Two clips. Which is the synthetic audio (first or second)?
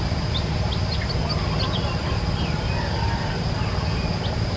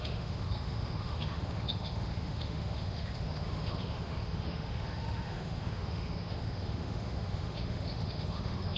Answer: second